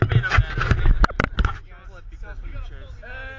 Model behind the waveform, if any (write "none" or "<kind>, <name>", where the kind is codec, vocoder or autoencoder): none